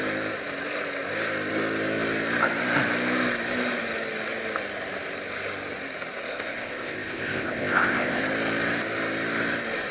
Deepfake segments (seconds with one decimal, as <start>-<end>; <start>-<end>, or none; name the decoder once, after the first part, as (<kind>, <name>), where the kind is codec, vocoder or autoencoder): 6.3-8.2 (codec, ZipCodec)